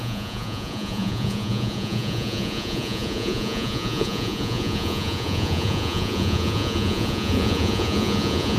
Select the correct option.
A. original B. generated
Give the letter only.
B